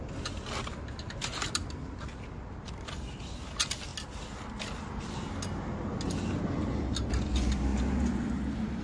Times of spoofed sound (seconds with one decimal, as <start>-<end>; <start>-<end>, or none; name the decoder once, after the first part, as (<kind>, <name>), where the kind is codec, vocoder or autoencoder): none